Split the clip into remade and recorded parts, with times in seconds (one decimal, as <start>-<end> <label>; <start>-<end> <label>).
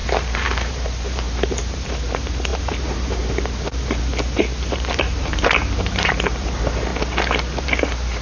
0.0-6.9 remade; 6.9-7.6 recorded; 7.6-8.2 remade